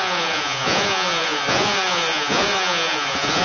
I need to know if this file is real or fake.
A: fake